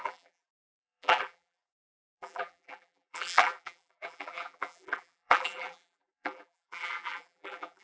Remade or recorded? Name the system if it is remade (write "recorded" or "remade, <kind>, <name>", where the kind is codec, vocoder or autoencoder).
remade, vocoder, BigVGAN v2